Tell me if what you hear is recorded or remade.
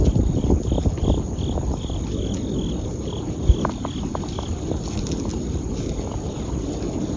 recorded